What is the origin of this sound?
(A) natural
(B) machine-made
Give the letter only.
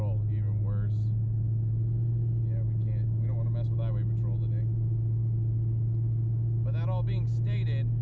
A